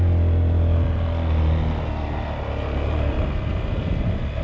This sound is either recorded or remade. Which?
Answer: recorded